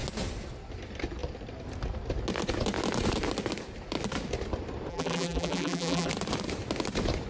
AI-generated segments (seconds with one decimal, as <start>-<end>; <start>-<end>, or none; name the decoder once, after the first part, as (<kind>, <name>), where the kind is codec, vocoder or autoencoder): 4.9-6.1 (vocoder, BigVGAN v2)